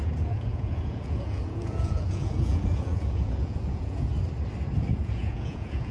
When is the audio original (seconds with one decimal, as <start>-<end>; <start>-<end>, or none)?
4.1-4.9